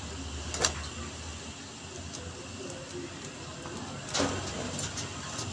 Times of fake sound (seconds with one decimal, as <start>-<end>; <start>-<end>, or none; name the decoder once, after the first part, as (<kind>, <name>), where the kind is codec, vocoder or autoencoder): none